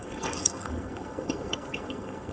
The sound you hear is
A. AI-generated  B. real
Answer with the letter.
A